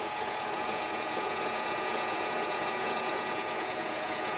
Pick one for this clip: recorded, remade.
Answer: remade